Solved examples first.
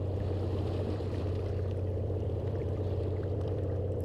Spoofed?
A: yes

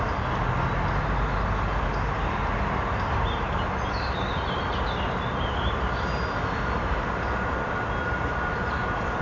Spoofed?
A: no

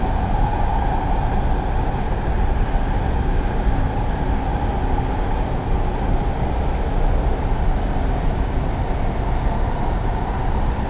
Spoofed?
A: no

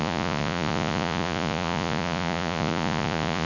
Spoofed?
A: yes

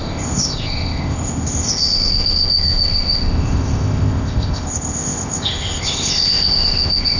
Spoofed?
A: yes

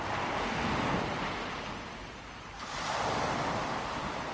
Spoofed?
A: no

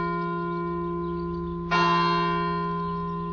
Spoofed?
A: no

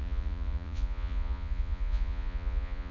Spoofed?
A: yes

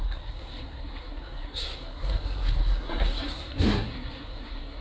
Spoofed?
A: yes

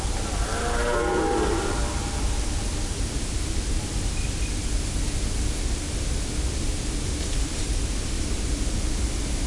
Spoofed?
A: no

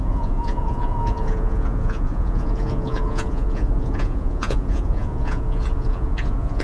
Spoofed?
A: yes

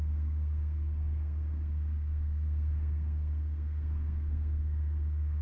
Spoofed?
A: yes